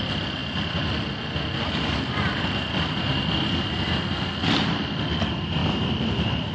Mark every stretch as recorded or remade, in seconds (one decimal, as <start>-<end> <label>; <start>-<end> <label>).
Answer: 0.0-6.5 recorded